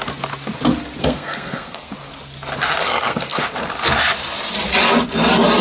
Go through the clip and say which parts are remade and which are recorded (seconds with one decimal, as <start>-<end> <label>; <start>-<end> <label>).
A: 0.0-1.0 recorded; 1.0-1.9 remade; 1.9-2.8 recorded; 2.8-3.4 remade; 3.4-5.6 recorded